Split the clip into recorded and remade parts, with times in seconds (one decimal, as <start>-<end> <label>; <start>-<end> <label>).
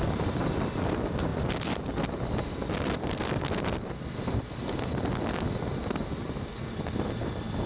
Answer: 0.0-7.7 recorded